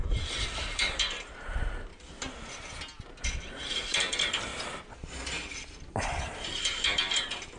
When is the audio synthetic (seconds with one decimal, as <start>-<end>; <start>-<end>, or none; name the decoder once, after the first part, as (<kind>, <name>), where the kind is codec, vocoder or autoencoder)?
0.0-1.9 (vocoder, BigVGAN v2); 3.7-4.5; 5.9-7.6